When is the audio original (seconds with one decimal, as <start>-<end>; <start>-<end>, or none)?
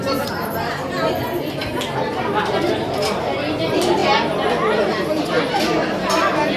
0.0-6.6